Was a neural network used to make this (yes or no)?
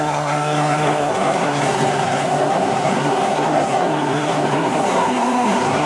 yes